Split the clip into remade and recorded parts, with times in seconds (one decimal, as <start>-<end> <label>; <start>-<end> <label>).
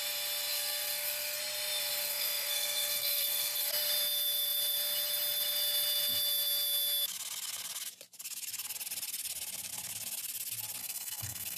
0.0-0.5 recorded; 0.5-1.4 remade; 1.4-2.0 recorded; 2.0-3.7 remade; 3.7-10.8 recorded; 10.8-11.6 remade